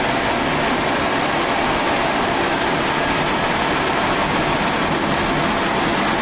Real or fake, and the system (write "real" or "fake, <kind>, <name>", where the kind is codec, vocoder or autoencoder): real